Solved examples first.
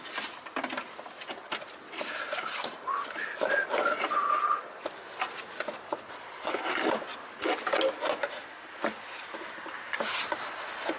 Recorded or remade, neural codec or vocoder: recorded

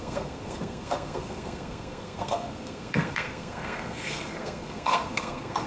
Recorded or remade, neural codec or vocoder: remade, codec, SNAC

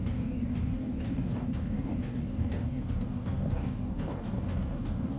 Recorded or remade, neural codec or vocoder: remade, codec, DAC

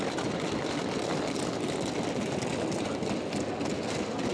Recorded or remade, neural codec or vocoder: recorded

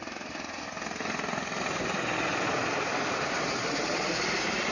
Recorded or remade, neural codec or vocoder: recorded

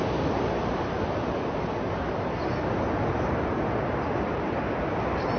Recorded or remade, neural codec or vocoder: recorded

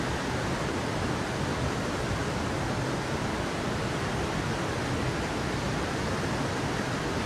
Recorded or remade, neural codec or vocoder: recorded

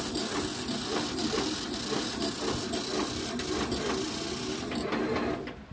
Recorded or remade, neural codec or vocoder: recorded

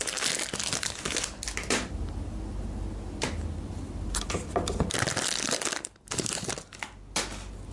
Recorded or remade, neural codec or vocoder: recorded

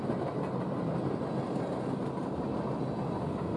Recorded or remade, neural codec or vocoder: recorded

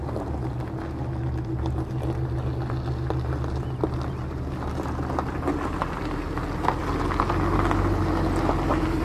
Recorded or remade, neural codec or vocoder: recorded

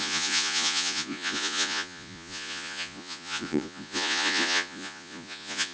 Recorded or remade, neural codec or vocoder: remade, vocoder, Vocos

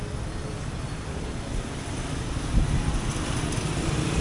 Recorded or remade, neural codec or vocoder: recorded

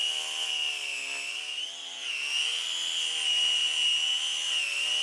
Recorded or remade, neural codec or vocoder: recorded